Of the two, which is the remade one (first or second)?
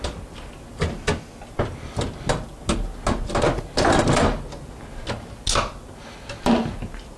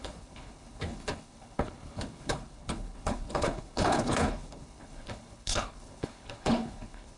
second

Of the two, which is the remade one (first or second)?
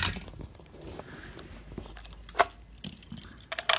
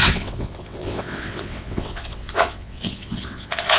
second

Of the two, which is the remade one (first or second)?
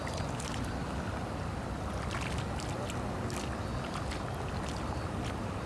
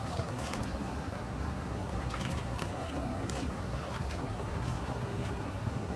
second